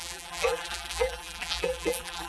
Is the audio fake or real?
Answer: fake